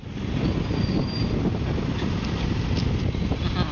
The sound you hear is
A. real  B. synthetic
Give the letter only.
A